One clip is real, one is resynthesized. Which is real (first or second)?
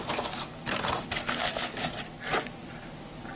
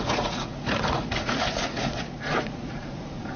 first